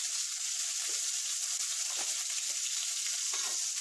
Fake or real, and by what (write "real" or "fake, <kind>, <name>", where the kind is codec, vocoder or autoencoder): real